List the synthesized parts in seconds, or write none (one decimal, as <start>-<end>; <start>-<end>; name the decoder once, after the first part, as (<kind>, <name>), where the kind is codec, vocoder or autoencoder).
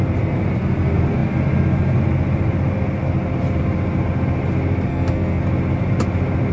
4.9-5.4 (codec, SNAC)